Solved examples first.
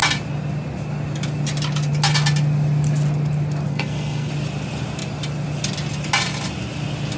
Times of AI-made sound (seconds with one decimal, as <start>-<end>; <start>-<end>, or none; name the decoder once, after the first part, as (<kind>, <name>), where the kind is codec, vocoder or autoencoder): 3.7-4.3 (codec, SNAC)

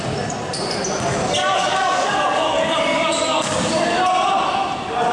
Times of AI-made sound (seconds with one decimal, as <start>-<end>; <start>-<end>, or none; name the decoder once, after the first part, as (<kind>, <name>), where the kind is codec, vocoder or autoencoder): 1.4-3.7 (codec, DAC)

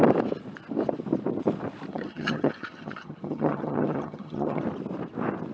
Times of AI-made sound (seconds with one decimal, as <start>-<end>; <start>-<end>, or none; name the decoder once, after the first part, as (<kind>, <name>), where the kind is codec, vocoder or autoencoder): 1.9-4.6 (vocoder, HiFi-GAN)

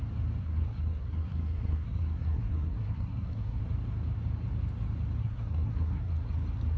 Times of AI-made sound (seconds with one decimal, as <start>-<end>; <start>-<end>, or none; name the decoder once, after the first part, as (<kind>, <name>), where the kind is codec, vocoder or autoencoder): 0.4-3.6 (codec, SNAC); 5.2-6.1

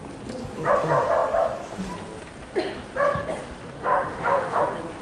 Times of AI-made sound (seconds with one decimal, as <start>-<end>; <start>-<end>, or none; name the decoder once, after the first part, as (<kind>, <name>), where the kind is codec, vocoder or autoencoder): 3.8-4.6 (autoencoder, DAC-VAE)